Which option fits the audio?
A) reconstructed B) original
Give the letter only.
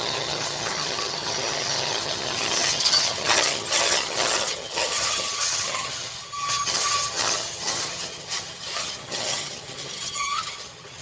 A